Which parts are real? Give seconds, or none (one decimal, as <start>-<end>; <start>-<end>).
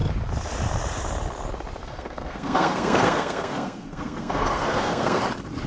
0.0-1.8; 5.2-5.7